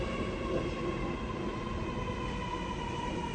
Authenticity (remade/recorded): recorded